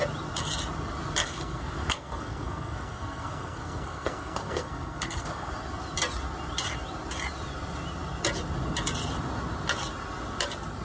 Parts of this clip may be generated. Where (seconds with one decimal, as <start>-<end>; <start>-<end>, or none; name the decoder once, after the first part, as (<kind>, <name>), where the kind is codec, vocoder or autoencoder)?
1.2-5.5 (codec, SNAC)